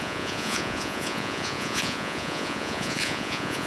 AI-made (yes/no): yes